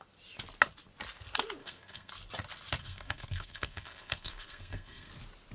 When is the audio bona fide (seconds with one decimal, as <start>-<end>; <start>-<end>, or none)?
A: 0.0-1.6; 2.1-2.8; 5.1-5.5